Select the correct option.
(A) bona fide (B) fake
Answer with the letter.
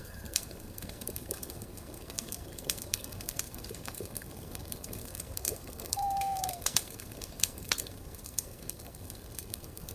B